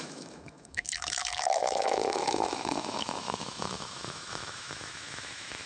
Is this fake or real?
fake